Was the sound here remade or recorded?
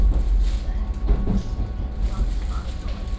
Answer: recorded